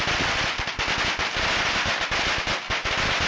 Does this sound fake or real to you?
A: real